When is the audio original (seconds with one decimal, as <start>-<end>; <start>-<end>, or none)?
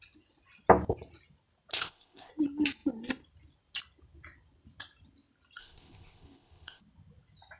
0.0-1.7; 2.3-5.6; 6.8-7.6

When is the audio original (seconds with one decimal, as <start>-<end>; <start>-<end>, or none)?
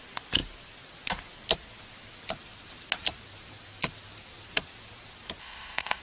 0.0-5.4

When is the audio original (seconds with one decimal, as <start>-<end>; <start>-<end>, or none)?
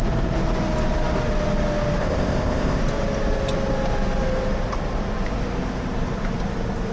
0.0-2.0; 2.8-6.9